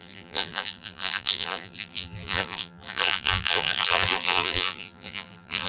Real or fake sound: fake